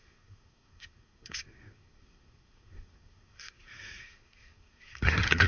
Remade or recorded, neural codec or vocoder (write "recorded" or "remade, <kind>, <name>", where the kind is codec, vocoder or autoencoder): remade, codec, SNAC